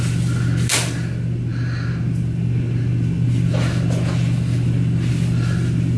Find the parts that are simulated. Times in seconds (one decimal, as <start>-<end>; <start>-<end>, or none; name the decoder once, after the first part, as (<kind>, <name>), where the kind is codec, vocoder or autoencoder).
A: none